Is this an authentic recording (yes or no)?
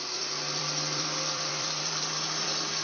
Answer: no